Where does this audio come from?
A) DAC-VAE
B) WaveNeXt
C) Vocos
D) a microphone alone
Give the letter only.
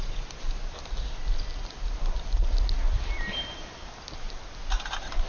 D